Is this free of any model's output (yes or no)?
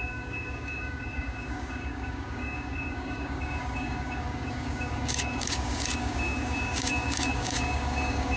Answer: no